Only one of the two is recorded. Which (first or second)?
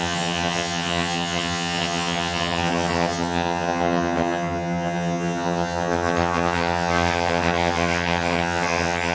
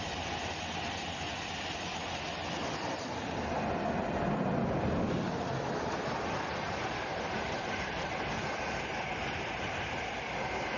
second